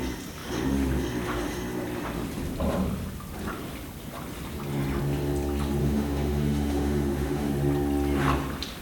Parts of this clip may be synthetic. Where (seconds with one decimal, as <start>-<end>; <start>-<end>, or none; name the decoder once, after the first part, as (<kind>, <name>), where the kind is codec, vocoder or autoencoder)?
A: 5.8-7.5 (autoencoder, DAC-VAE)